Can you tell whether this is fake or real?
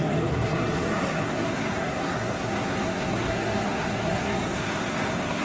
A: fake